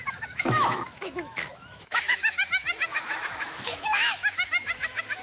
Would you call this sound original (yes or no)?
no